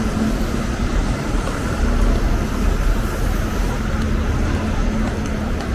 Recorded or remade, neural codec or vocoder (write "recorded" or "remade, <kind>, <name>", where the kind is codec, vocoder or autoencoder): recorded